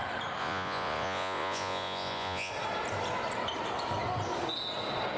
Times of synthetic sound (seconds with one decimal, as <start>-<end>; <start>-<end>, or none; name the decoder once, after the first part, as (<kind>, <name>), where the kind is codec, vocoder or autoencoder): 0.4-2.5 (vocoder, Vocos)